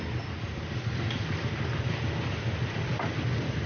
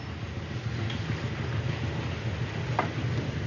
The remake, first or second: first